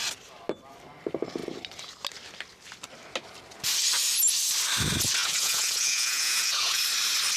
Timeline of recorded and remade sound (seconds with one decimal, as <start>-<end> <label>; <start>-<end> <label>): 0.0-5.2 recorded; 5.2-6.8 remade; 6.8-7.4 recorded